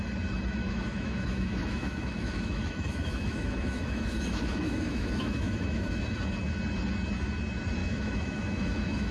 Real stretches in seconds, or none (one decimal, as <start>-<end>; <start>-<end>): 0.0-0.6; 5.9-7.8